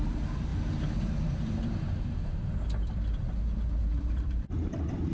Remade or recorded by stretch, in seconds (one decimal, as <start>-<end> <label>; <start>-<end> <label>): 0.0-0.5 remade; 0.5-1.1 recorded; 1.1-2.4 remade; 2.4-3.8 recorded; 3.8-5.1 remade